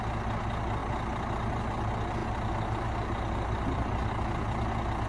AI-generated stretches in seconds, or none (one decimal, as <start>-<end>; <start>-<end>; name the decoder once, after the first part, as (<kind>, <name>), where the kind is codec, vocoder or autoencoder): 2.2-4.1 (vocoder, BigVGAN v2)